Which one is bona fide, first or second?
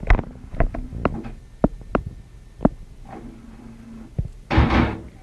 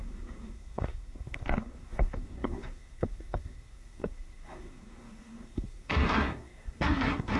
first